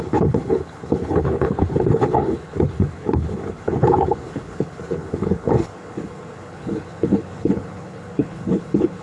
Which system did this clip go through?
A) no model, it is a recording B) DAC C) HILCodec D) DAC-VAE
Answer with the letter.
C